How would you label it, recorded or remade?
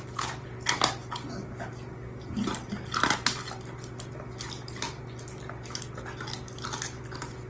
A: recorded